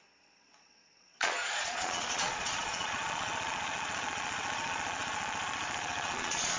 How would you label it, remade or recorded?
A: remade